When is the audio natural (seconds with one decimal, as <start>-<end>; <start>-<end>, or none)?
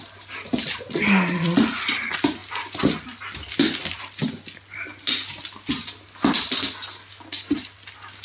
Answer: 0.0-8.2